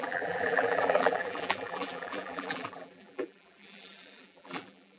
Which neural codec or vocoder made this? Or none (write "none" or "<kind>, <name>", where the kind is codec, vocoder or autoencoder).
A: vocoder, BigVGAN v2